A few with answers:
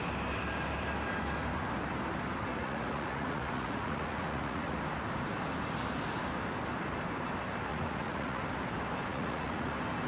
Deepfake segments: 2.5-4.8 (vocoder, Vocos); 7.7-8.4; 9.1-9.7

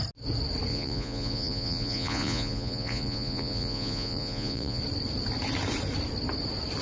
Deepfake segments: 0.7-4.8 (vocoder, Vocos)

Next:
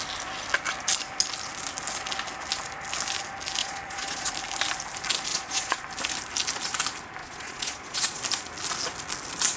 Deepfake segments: 3.6-4.3 (vocoder, Vocos); 5.3-5.8; 7.2-8.2

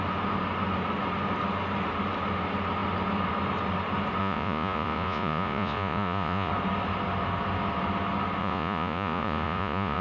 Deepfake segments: 4.2-6.5 (vocoder, Vocos); 8.4-10.0